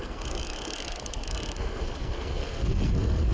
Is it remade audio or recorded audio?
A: remade